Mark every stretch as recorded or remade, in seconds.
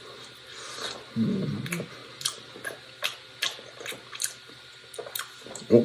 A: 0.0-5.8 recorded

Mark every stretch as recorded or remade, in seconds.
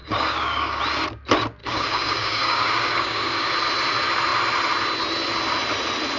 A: 0.0-0.8 remade; 0.8-1.6 recorded; 1.6-3.5 remade; 3.5-6.2 recorded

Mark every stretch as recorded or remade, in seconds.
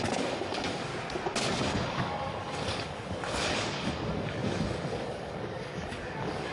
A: 0.0-0.9 remade; 0.9-1.4 recorded; 1.4-6.5 remade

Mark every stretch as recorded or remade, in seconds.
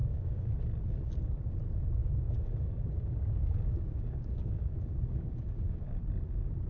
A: 0.0-0.6 remade; 0.6-2.0 recorded; 2.0-6.0 remade; 6.0-6.7 recorded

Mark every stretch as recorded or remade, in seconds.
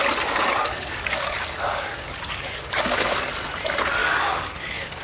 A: 0.0-0.6 recorded; 0.6-3.1 remade; 3.1-4.0 recorded; 4.0-5.0 remade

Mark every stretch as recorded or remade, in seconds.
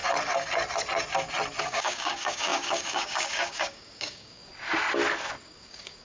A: 0.0-1.6 recorded; 1.6-4.5 remade; 4.5-5.4 recorded; 5.4-6.0 remade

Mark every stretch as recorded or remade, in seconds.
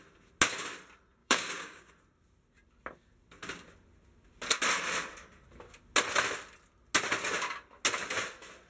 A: 0.0-1.2 recorded; 1.2-1.9 remade; 1.9-8.7 recorded